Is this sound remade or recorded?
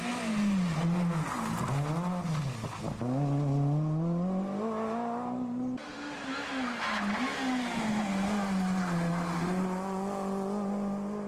recorded